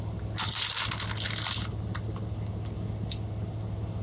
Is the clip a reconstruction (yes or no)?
no